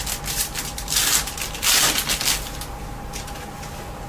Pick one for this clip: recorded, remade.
recorded